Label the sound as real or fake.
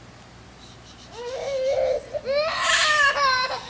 real